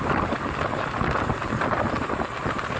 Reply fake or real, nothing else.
real